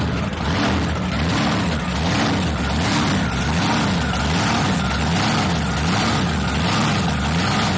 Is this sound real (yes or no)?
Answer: yes